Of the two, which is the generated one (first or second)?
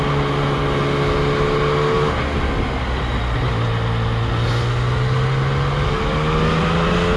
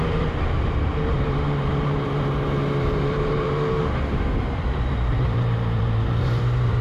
second